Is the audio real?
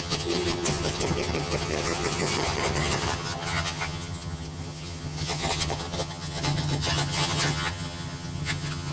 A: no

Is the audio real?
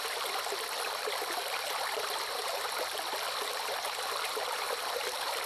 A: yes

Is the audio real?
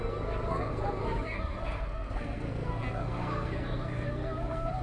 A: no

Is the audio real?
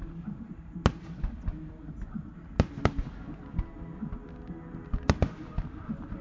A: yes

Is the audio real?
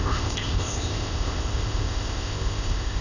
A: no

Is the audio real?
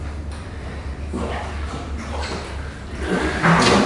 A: yes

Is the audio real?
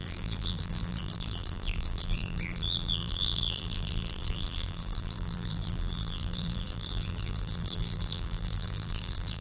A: no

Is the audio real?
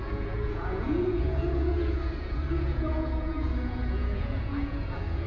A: no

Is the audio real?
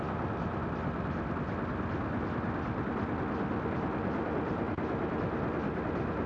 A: yes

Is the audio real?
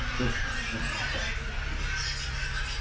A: yes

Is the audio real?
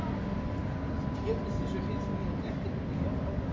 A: yes